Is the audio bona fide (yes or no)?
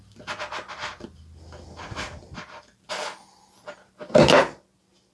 yes